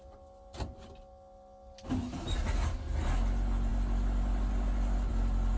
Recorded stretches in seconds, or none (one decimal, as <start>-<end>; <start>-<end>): 0.0-5.6